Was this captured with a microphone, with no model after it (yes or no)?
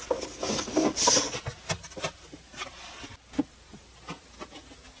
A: yes